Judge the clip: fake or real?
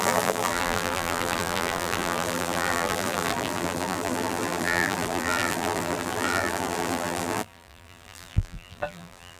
fake